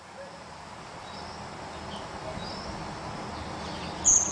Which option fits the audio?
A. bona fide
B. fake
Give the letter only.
A